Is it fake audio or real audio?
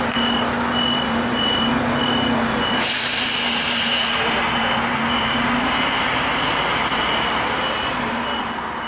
real